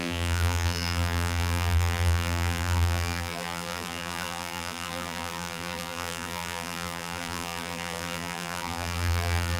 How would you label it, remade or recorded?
remade